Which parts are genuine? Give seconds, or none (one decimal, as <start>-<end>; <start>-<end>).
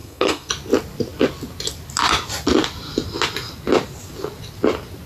0.5-5.1